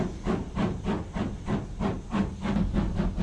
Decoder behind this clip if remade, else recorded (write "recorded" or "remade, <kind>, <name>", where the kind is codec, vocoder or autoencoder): recorded